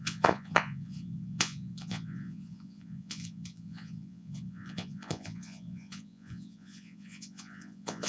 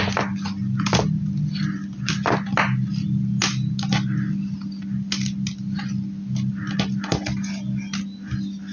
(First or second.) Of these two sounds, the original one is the second